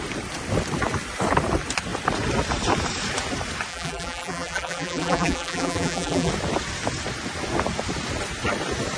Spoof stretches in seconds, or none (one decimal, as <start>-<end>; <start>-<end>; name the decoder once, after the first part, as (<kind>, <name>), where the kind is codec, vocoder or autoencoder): 3.7-6.3 (vocoder, BigVGAN v2)